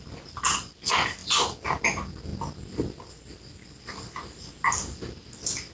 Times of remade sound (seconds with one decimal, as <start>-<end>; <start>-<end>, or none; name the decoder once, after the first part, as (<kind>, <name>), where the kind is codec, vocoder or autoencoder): none